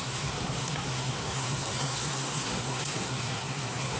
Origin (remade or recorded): remade